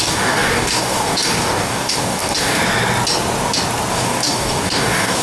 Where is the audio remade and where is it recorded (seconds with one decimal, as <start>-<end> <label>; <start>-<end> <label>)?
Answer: 0.0-2.6 remade; 2.6-3.9 recorded; 3.9-5.2 remade